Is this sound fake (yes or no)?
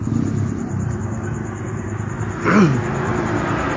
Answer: no